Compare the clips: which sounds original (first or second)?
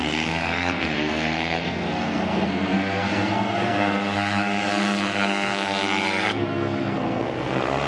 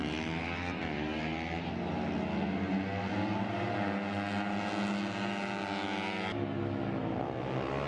second